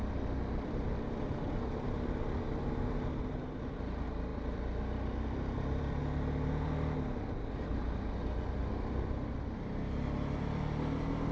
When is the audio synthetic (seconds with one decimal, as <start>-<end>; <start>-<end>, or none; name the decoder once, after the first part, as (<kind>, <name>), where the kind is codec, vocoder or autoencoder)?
0.0-2.8 (vocoder, BigVGAN v2); 4.3-6.0; 8.6-9.4